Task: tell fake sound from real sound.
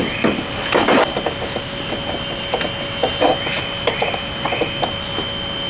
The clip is real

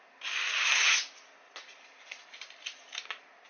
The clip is real